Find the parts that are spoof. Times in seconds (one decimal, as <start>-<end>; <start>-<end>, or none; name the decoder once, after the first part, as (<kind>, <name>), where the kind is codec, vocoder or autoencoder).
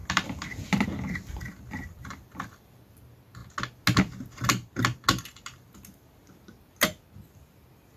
0.0-3.0 (vocoder, BigVGAN v2)